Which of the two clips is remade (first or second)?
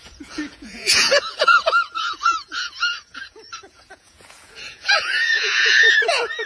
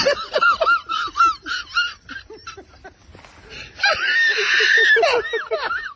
first